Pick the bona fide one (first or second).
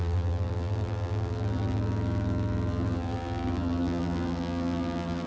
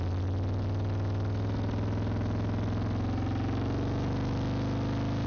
second